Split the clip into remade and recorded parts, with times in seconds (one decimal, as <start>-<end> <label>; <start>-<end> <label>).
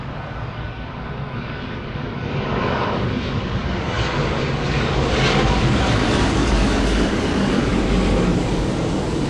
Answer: 0.0-9.3 remade